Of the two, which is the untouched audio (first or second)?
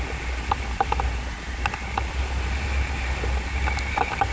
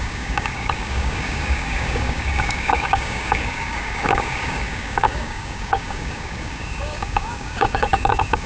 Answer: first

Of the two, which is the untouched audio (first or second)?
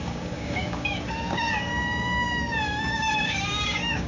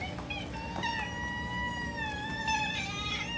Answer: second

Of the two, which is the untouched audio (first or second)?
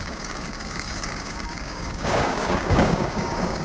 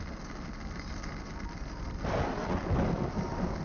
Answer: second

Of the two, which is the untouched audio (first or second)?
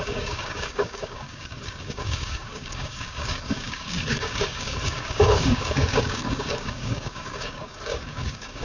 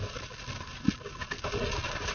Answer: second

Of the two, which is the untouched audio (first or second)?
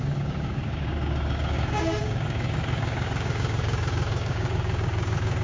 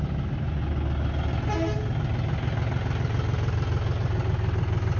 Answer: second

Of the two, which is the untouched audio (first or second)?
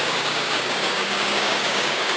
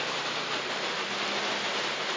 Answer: second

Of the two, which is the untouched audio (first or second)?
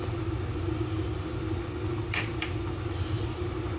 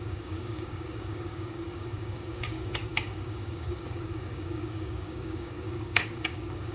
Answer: first